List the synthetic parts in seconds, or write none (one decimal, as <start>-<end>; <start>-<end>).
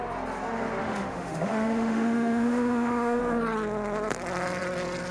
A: 0.8-3.2